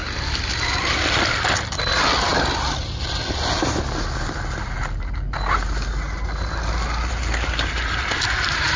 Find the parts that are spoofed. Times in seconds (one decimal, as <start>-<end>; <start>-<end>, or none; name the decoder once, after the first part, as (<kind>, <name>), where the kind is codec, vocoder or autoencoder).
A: none